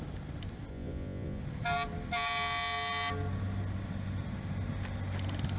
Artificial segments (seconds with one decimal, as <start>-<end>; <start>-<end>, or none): 0.7-1.4

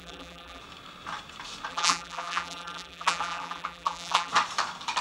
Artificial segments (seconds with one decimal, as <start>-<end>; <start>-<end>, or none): 0.0-0.6; 1.7-4.3

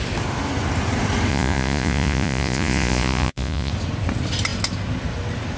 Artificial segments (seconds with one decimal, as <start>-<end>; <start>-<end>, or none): 1.3-3.7

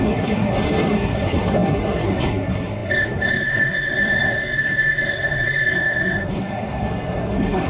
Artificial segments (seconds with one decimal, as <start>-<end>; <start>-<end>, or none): 0.0-7.7

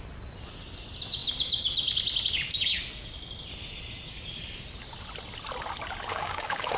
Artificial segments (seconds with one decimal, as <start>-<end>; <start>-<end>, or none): 6.1-6.8